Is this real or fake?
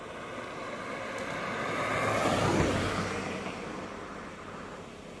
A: real